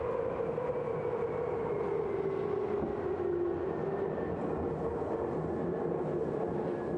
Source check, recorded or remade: recorded